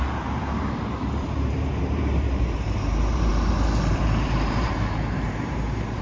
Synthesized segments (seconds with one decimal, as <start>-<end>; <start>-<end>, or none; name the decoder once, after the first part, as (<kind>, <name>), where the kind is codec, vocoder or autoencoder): 0.0-3.3 (vocoder, BigVGAN v2); 3.9-6.0